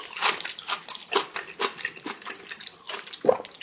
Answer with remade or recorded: recorded